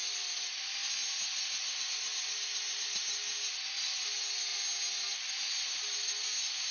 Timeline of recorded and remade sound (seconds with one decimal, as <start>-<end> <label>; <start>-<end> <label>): 0.0-6.7 recorded